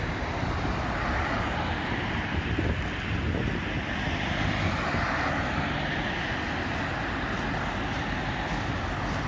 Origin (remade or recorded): recorded